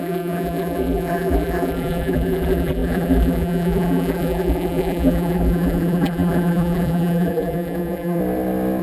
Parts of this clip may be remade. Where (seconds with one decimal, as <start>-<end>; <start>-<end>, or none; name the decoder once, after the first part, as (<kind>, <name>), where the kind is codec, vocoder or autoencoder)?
0.0-8.2 (vocoder, BigVGAN v2)